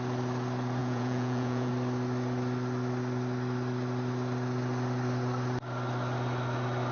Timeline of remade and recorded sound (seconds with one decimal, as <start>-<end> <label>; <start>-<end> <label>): 0.0-0.8 recorded; 0.8-1.7 remade; 1.7-6.9 recorded